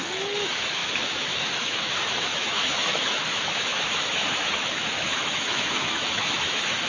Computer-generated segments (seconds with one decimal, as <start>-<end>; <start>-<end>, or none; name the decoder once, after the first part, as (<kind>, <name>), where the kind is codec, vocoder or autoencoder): 0.0-6.9 (autoencoder, DAC-VAE)